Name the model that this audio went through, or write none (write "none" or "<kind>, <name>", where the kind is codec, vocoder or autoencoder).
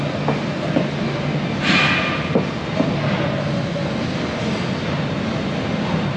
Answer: none